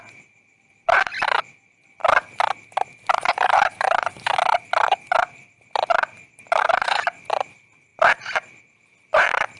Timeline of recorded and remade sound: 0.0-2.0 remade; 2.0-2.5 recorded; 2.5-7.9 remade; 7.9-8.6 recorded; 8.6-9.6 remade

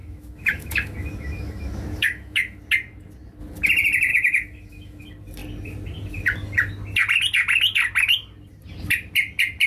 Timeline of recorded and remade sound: 0.0-2.6 remade; 2.6-4.1 recorded; 4.1-5.0 remade; 5.0-9.7 recorded

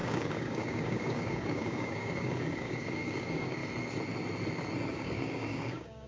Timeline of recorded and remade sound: 0.0-3.6 remade; 3.6-4.9 recorded; 4.9-6.1 remade

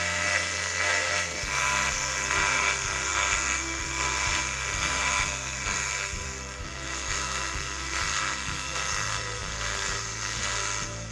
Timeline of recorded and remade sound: 0.0-11.1 remade

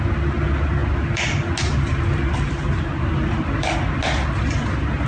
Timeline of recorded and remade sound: 0.0-5.1 recorded